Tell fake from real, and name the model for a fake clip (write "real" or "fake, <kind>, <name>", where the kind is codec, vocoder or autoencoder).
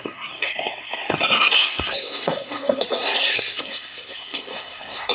fake, codec, SNAC